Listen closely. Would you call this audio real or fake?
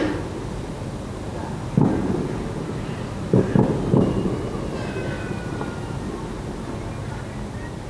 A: real